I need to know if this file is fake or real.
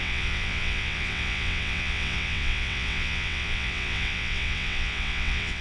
fake